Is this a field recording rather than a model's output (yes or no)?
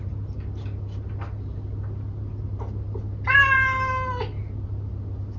yes